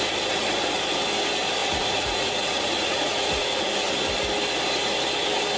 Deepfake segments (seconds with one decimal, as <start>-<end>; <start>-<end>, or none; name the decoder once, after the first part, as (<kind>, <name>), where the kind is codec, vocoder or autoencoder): 1.6-3.7 (vocoder, Vocos)